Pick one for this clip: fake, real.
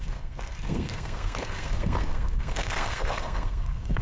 fake